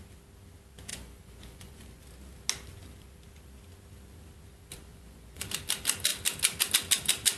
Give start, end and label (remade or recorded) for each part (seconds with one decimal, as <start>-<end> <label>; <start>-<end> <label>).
0.0-0.9 recorded; 0.9-2.0 remade; 2.0-4.9 recorded; 4.9-5.5 remade; 5.5-7.4 recorded